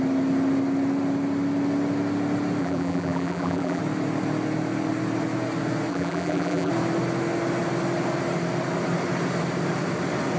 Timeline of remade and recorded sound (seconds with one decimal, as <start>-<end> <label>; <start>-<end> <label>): 0.0-2.6 recorded; 2.6-3.8 remade; 3.8-5.9 recorded; 5.9-6.7 remade; 6.7-10.4 recorded